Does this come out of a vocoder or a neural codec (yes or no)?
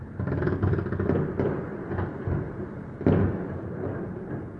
no